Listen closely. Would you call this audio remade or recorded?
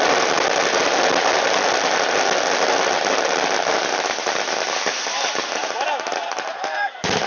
recorded